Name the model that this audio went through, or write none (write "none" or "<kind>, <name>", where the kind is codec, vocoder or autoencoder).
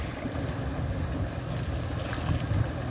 none